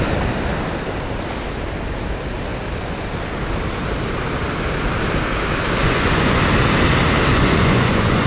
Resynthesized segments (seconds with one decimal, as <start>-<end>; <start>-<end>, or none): 5.8-6.4; 7.3-8.3